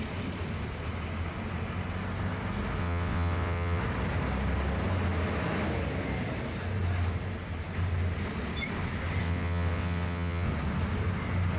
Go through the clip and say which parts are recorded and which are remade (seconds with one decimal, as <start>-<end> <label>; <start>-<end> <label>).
0.0-2.8 recorded; 2.8-3.8 remade; 3.8-9.2 recorded; 9.2-10.5 remade; 10.5-11.6 recorded